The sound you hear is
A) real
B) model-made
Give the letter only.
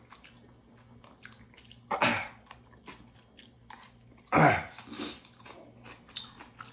A